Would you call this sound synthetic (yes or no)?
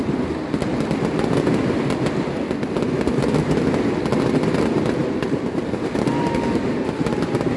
no